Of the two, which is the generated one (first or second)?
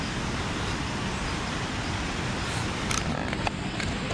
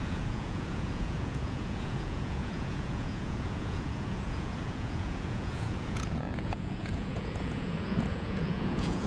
second